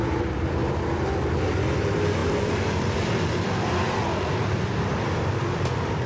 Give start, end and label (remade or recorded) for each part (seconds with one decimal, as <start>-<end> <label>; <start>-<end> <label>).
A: 0.0-2.2 recorded; 2.2-6.1 remade